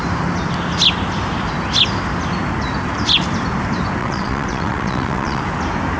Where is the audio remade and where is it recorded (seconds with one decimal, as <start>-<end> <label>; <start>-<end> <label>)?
0.0-4.0 recorded; 4.0-5.4 remade; 5.4-6.0 recorded